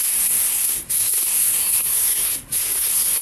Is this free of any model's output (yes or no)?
no